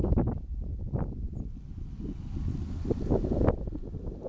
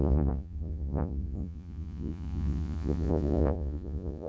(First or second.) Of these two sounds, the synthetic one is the second